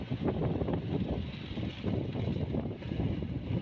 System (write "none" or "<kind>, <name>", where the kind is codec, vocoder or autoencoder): none